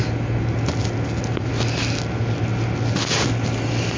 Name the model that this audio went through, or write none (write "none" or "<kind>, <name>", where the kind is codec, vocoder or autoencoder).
none